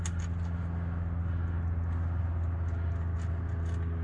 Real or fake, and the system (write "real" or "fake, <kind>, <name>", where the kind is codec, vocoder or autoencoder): real